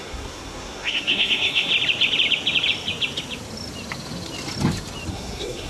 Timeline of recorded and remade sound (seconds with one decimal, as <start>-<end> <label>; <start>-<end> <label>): 0.0-1.7 remade; 1.7-5.1 recorded; 5.1-5.7 remade